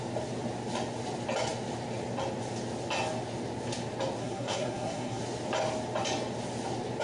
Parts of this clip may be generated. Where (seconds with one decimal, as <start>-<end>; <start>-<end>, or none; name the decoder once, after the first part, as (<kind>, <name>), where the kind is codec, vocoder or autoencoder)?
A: 4.2-5.2 (codec, SNAC)